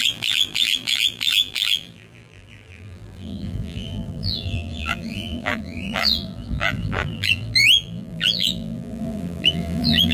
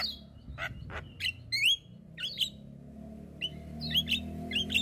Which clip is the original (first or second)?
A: second